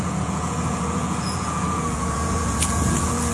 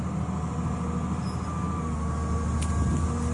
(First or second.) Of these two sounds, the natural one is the second